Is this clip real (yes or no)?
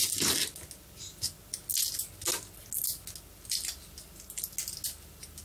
yes